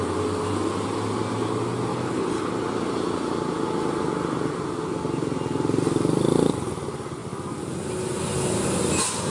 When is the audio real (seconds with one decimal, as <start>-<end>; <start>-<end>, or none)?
0.0-1.9; 2.5-9.3